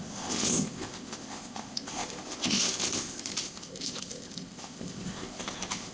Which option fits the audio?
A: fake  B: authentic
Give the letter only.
A